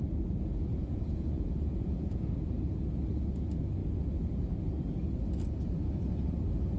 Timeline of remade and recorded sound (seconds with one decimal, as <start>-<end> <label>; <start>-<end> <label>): 0.0-0.7 recorded; 0.7-2.3 remade; 2.3-6.8 recorded